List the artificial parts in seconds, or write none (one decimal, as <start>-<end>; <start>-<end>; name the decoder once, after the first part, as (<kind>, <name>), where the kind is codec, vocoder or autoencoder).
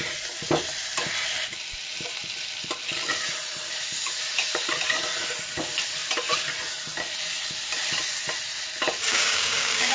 9.1-9.9 (codec, DAC)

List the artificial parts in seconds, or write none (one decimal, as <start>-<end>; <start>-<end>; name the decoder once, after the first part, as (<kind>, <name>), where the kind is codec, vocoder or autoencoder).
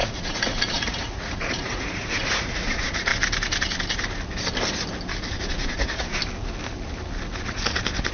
0.0-3.1 (vocoder, Vocos); 5.3-6.2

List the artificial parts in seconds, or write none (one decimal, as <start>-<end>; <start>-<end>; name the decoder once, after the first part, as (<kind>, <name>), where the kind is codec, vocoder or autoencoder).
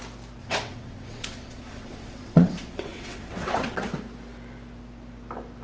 0.4-3.8 (vocoder, WaveNeXt)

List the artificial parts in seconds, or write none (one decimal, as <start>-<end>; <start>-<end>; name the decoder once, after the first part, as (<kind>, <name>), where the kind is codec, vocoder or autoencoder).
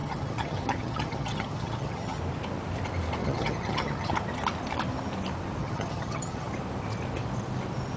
0.0-2.2 (vocoder, HiFi-GAN); 3.2-4.1; 5.6-6.5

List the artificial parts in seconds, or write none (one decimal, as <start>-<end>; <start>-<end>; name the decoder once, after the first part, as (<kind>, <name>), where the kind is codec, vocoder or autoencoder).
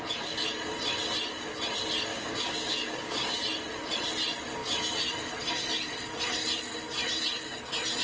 2.1-3.4 (codec, DAC)